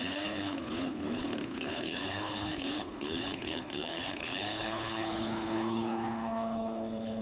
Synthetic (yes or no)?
yes